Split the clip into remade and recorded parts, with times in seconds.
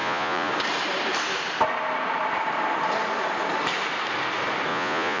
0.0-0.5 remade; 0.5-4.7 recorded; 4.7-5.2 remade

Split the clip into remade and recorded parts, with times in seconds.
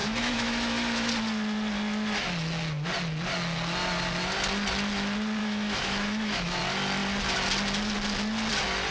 0.0-1.1 remade; 1.1-5.4 recorded; 5.4-6.6 remade; 6.6-8.9 recorded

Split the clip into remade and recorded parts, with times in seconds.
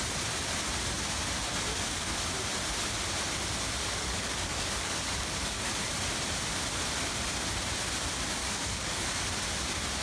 0.0-1.7 recorded; 1.7-2.2 remade; 2.2-3.8 recorded; 3.8-5.7 remade; 5.7-8.4 recorded; 8.4-9.3 remade; 9.3-10.0 recorded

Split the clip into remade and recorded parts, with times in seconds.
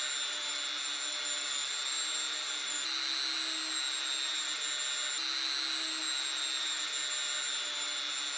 0.0-8.4 recorded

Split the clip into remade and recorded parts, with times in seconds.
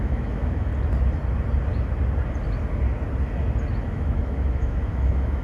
0.0-0.7 remade; 0.7-3.9 recorded; 3.9-5.4 remade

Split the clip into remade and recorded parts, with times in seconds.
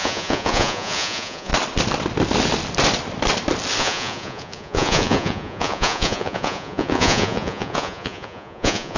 0.0-1.5 remade; 1.5-3.8 recorded; 3.8-9.0 remade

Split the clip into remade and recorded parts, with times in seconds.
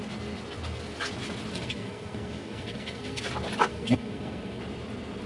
0.0-1.5 recorded; 1.5-3.2 remade; 3.2-3.7 recorded; 3.7-4.6 remade; 4.6-5.3 recorded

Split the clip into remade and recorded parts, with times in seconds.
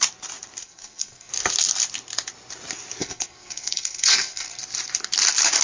0.0-0.6 recorded; 0.6-1.3 remade; 1.3-3.0 recorded; 3.0-4.6 remade; 4.6-5.6 recorded